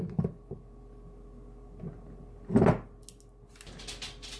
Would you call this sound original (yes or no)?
yes